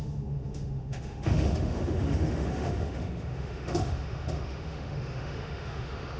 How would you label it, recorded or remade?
remade